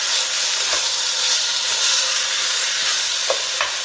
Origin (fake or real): real